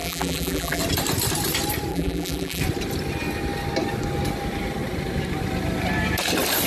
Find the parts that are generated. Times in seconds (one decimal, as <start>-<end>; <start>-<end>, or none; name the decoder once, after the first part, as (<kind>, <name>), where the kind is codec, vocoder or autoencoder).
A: 0.0-0.8 (vocoder, BigVGAN v2); 1.9-2.6